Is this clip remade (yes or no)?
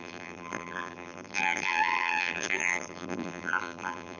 yes